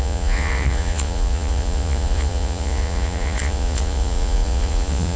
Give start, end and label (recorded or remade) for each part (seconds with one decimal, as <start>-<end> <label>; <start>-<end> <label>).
0.0-5.2 remade